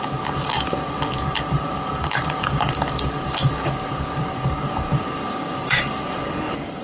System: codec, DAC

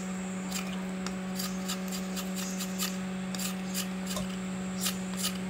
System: none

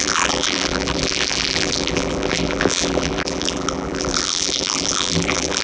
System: vocoder, BigVGAN v2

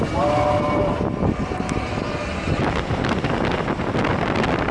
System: none